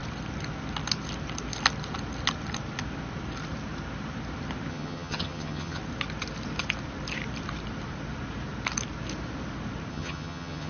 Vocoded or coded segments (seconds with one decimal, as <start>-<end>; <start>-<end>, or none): 4.7-5.8; 9.9-10.7

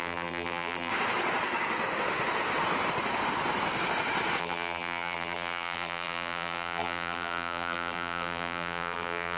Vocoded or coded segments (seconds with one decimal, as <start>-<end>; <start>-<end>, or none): 0.0-0.9; 4.4-9.4